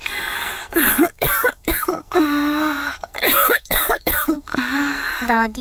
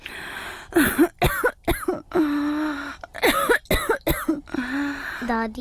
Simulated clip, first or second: first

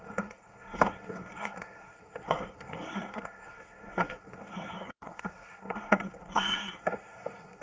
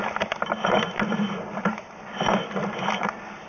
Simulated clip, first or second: first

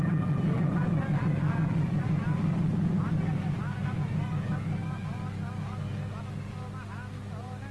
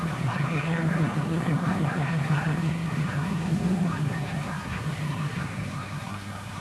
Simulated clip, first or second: second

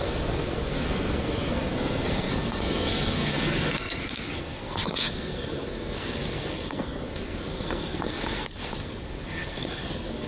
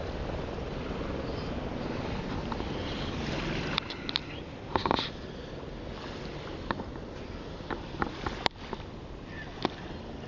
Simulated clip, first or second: first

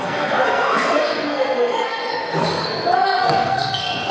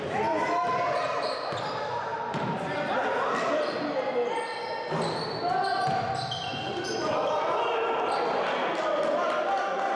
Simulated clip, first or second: first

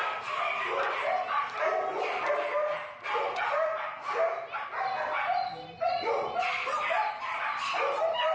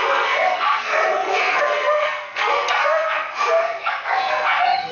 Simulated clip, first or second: second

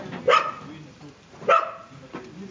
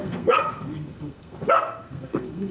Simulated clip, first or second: second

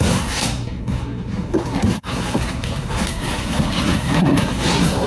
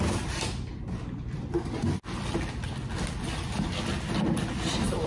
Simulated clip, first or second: first